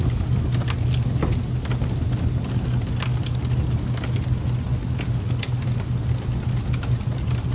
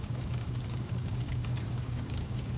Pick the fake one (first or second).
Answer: second